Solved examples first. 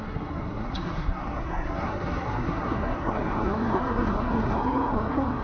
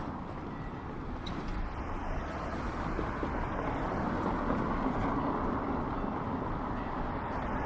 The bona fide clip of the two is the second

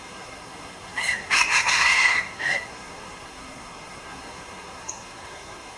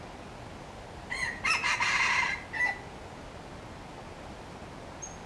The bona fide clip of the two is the second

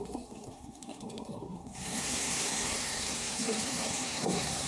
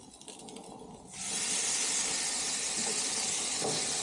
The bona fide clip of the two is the second